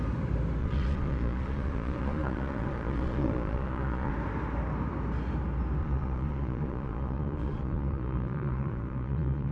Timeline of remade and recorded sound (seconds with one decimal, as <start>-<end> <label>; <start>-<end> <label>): 0.0-0.6 recorded; 0.6-4.1 remade; 4.1-5.8 recorded; 5.8-9.5 remade